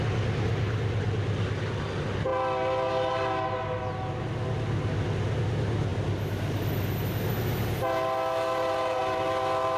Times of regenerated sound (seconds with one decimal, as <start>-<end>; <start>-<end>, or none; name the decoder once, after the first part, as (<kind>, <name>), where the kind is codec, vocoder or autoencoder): none